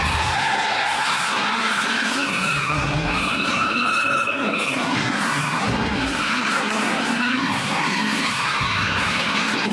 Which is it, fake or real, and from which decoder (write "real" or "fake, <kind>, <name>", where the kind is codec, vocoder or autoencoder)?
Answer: fake, codec, SNAC